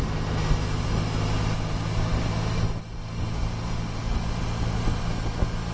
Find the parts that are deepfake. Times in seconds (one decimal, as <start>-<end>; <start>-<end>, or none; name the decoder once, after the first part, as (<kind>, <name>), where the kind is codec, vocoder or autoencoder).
none